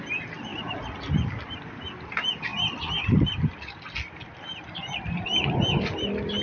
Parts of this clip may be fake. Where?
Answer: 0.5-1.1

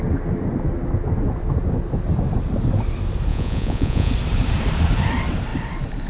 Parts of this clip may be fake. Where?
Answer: 3.3-4.1

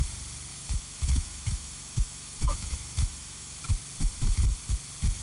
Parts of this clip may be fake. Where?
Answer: 0.5-3.6

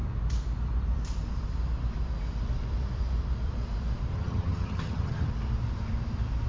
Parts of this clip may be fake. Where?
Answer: 4.1-5.3

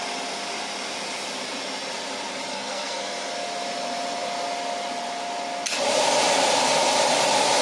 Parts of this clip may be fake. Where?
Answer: 2.5-3.3

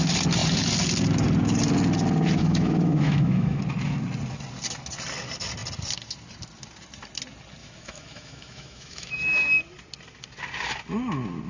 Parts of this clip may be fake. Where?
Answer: 2.4-3.6; 7.6-9.6

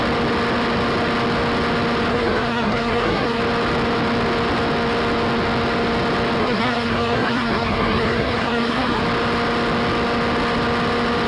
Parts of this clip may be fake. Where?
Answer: 2.1-3.4; 6.4-9.0